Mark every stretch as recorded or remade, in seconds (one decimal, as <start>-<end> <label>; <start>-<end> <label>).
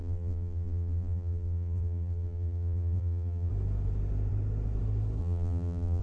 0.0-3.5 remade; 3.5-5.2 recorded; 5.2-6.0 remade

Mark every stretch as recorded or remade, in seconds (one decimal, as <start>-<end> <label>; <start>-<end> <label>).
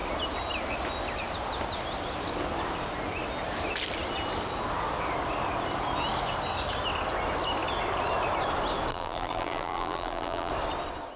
0.0-8.9 recorded; 8.9-10.5 remade; 10.5-11.2 recorded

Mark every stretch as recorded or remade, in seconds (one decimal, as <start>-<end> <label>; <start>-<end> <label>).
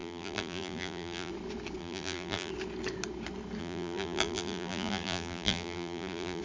0.0-1.3 remade; 1.3-1.8 recorded; 1.8-2.5 remade; 2.5-3.6 recorded; 3.6-6.4 remade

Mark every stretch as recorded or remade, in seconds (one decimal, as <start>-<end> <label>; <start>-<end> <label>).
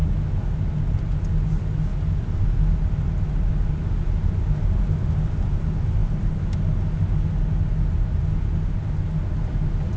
0.0-10.0 recorded